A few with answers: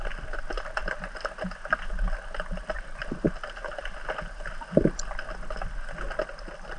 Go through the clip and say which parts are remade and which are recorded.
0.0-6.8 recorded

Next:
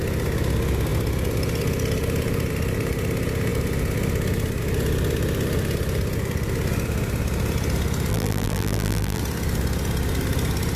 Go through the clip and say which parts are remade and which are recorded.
0.0-8.1 recorded; 8.1-9.2 remade; 9.2-10.8 recorded